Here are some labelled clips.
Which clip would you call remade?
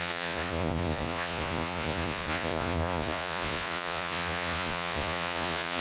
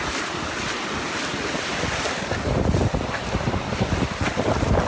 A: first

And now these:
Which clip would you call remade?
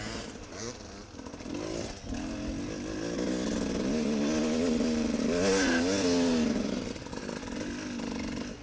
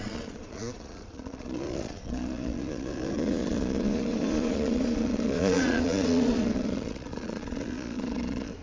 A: second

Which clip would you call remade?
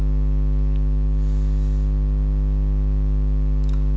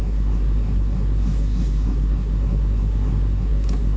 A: second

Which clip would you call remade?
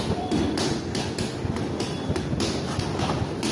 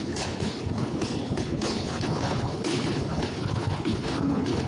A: second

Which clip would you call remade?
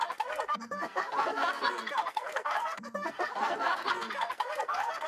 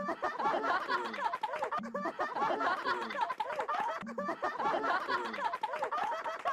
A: first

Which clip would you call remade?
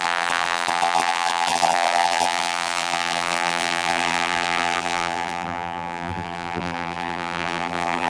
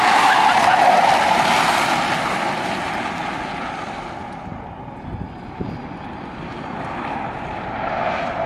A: first